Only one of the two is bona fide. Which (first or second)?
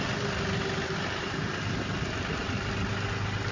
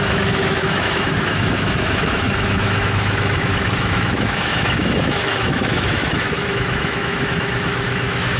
first